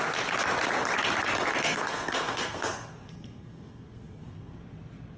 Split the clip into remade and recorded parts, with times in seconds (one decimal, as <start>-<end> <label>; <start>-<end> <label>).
0.0-1.5 recorded; 1.5-4.6 remade; 4.6-5.2 recorded